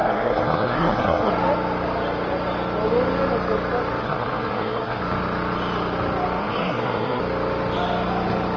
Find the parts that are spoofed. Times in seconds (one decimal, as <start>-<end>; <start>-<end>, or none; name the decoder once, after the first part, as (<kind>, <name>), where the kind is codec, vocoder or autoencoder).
0.0-1.3 (codec, SNAC); 4.0-5.0; 6.4-7.2